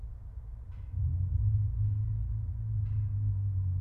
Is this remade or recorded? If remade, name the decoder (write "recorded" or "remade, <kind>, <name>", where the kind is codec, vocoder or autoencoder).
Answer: recorded